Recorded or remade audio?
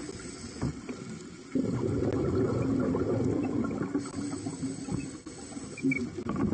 recorded